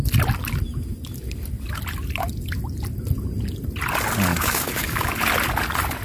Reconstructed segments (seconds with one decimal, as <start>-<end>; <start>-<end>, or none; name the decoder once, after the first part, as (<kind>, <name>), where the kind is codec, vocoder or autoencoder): 4.3-5.1 (codec, DAC)